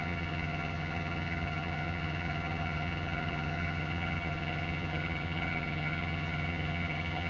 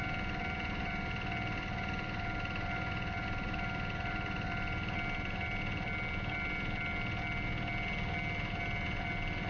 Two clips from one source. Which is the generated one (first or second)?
first